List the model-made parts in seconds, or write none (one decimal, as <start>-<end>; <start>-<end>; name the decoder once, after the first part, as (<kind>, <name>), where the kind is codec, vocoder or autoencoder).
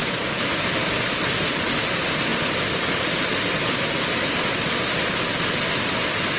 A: none